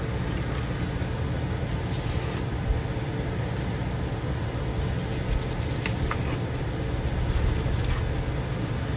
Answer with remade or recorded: recorded